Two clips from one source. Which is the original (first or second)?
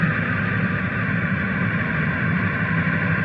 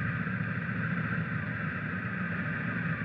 second